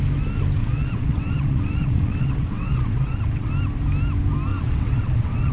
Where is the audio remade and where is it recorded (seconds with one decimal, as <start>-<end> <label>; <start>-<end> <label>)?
0.0-0.6 recorded; 0.6-3.5 remade; 3.5-4.5 recorded; 4.5-5.5 remade